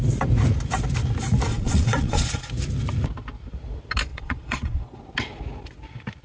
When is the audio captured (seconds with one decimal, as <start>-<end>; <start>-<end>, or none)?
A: 0.0-1.5; 2.5-4.1; 5.0-6.2